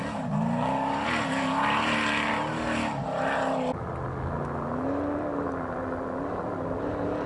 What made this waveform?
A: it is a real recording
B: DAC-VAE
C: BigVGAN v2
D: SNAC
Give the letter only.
A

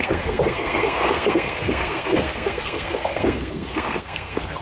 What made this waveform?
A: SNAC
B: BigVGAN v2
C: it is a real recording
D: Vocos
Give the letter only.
A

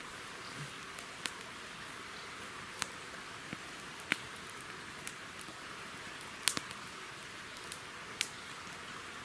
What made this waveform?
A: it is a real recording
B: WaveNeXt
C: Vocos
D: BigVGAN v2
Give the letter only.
A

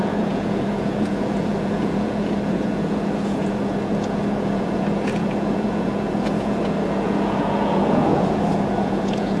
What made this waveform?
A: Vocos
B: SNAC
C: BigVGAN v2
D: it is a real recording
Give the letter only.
A